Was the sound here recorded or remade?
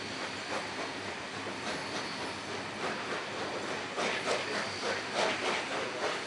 recorded